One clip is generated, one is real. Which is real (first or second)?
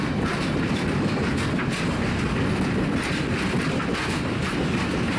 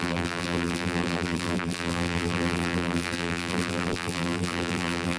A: first